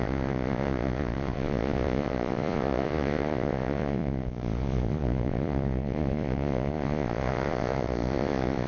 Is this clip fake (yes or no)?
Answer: yes